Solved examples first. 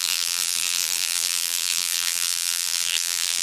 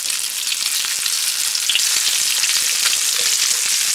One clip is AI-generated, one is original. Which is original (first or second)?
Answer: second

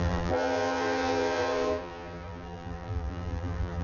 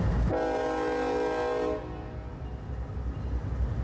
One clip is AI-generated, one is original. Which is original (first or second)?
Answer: second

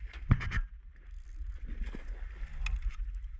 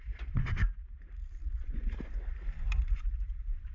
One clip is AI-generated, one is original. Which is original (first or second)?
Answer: first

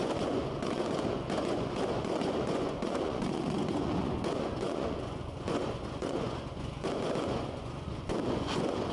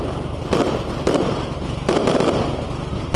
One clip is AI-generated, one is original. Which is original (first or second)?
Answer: second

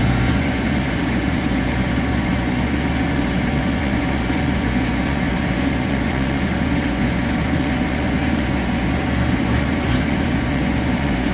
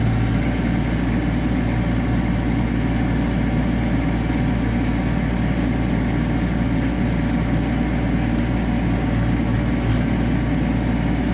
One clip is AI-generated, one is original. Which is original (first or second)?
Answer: second